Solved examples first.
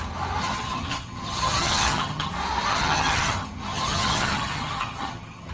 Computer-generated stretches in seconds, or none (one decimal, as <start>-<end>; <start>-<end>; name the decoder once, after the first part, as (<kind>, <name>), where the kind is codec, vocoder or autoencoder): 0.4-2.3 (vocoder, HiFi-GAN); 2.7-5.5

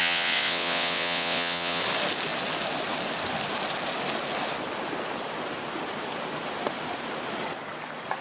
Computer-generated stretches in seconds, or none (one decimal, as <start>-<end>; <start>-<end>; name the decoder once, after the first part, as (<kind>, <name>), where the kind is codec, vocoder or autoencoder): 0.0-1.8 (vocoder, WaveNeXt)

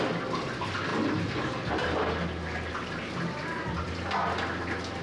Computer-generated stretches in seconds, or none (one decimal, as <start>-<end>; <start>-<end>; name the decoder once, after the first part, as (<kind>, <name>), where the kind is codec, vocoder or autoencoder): none